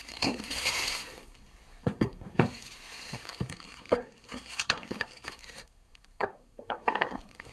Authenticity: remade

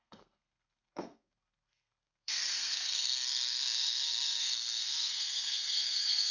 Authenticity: remade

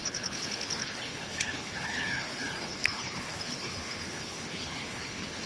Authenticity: remade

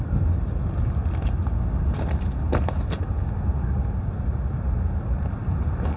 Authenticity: recorded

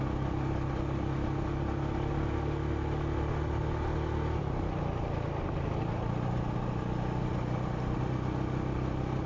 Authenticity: recorded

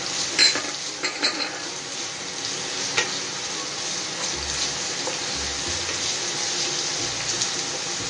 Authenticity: recorded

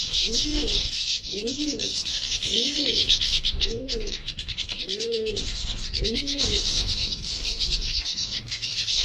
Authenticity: remade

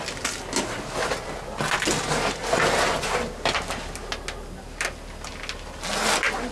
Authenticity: recorded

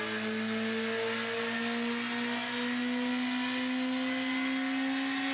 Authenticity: recorded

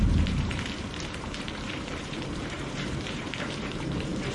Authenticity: remade